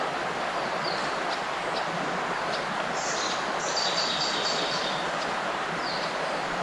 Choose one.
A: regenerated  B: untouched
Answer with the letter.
B